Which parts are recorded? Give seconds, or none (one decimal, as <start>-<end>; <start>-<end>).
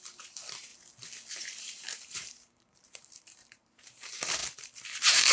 0.7-1.3